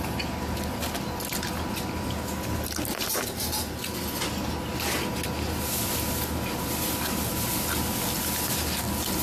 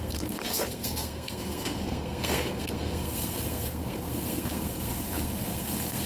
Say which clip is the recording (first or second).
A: first